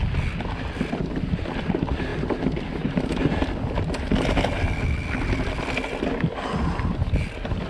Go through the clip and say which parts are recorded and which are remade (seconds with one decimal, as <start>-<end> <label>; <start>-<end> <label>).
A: 0.0-7.7 recorded